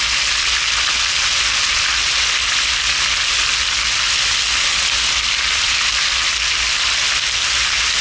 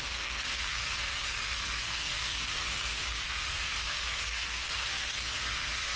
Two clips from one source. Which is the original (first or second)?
first